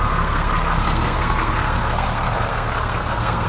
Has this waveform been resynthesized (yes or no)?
yes